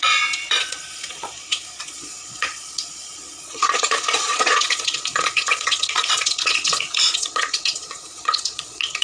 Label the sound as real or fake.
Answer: fake